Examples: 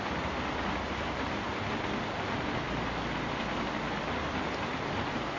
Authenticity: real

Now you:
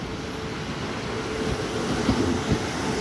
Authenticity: real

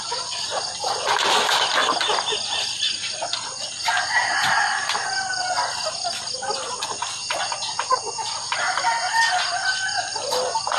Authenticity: real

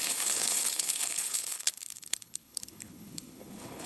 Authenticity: fake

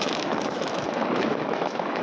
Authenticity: fake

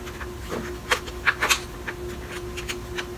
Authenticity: real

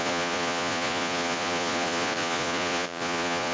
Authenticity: fake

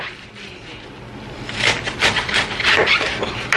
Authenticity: real